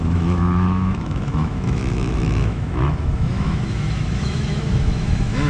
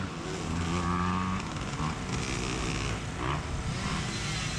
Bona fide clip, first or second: second